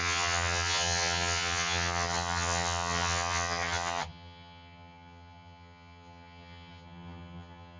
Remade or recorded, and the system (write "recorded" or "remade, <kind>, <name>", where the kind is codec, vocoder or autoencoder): remade, vocoder, HiFi-GAN